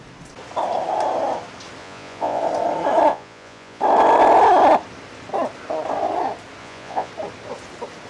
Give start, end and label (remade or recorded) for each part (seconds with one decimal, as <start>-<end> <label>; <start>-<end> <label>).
0.0-1.8 recorded; 1.8-2.4 remade; 2.4-3.1 recorded; 3.1-3.8 remade; 3.8-6.6 recorded; 6.6-7.1 remade; 7.1-8.1 recorded